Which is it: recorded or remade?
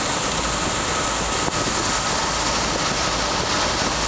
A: recorded